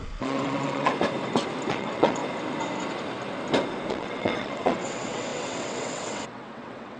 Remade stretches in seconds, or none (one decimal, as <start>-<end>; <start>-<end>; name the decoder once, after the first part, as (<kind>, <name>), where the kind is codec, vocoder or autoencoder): 0.0-0.9 (vocoder, WaveNeXt); 1.7-2.2; 3.9-7.0